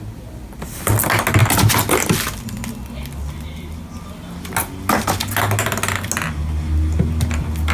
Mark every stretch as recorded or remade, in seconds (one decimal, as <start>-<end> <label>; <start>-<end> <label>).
0.0-7.7 recorded